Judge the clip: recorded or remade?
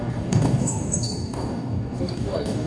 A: remade